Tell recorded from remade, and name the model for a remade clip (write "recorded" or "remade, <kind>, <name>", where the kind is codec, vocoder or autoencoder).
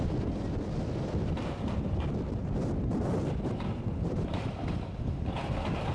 recorded